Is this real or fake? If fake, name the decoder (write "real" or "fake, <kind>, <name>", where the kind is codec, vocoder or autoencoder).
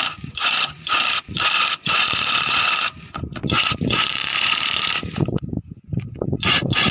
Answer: fake, vocoder, Vocos